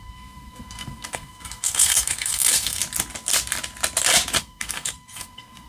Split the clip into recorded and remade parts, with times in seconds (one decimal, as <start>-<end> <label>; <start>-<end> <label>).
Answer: 0.0-2.8 remade; 2.8-4.4 recorded; 4.4-5.7 remade